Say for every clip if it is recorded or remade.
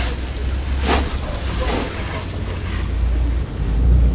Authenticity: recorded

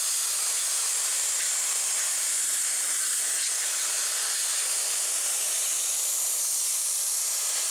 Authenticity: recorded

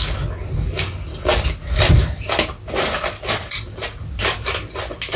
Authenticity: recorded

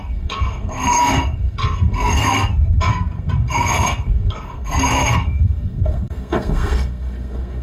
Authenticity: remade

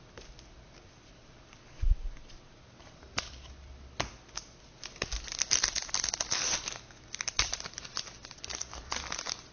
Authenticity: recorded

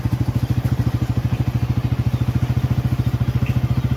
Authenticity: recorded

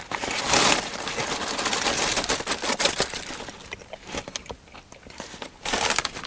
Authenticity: recorded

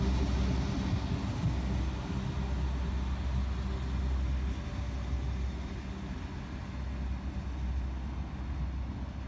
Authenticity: recorded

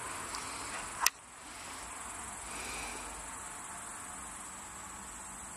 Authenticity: recorded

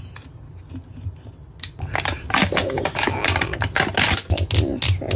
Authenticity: recorded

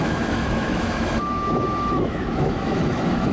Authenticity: remade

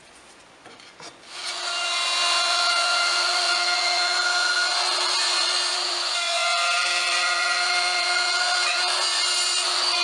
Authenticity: remade